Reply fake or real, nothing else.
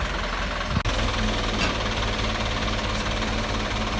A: real